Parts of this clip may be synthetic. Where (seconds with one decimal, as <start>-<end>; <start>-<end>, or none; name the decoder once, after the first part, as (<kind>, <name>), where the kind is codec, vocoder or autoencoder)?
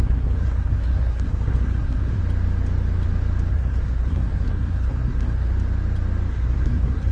0.0-2.2 (codec, SNAC); 3.5-5.5; 6.3-7.1